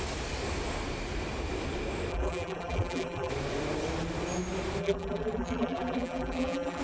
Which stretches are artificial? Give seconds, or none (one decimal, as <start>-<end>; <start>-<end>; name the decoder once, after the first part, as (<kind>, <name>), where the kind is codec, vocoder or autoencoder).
2.1-3.3 (vocoder, BigVGAN v2); 4.8-6.8